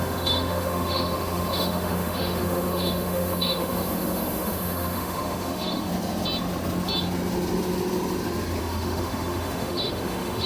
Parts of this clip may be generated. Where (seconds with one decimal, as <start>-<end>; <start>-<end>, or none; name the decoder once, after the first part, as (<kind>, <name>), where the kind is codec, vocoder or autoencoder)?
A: 0.0-5.9 (autoencoder, DAC-VAE); 8.6-10.5